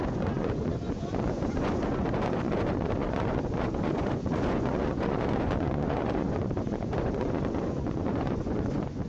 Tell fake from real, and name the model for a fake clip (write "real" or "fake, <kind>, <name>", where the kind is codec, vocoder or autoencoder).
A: fake, vocoder, Vocos